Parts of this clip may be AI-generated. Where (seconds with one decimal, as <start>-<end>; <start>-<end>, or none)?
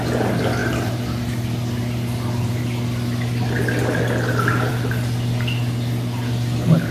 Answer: none